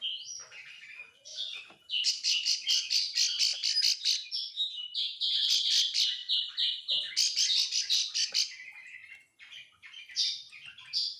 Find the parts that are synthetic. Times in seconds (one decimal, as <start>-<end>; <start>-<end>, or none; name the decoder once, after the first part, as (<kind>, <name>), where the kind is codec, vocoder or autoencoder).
none